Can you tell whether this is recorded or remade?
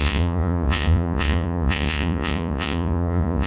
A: remade